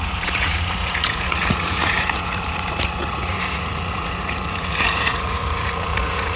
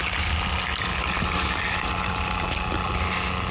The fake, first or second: first